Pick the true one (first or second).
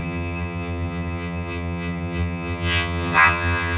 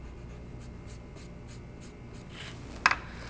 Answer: second